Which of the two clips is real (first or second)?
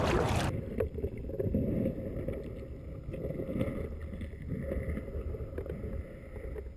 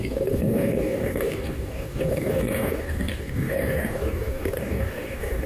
first